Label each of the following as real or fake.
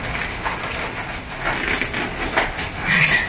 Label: real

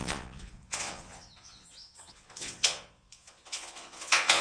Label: fake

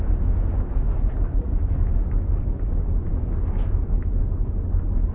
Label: real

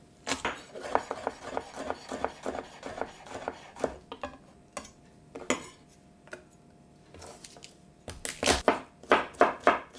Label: real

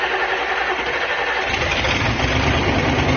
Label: real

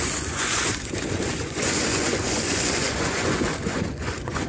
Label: fake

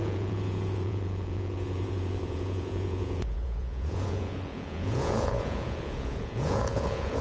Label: fake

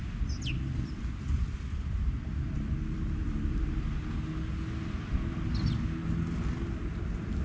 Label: real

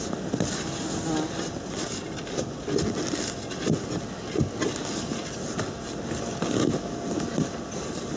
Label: real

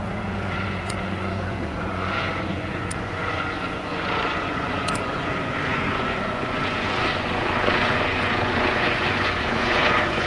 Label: fake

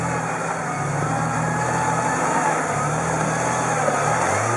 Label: real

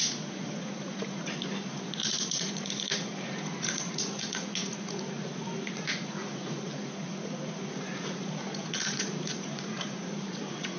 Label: fake